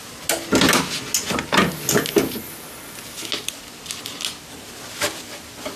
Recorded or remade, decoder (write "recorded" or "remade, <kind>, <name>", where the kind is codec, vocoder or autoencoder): recorded